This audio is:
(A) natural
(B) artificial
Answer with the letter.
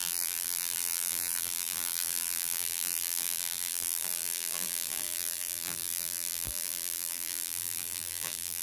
B